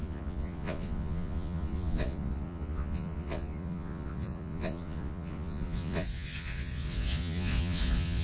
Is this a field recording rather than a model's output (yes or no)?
no